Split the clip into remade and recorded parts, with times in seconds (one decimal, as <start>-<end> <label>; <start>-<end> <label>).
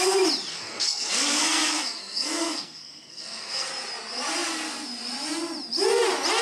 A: 0.0-0.5 recorded; 0.5-3.7 remade; 3.7-6.4 recorded